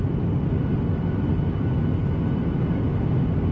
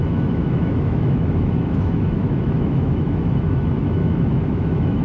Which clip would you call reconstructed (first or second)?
second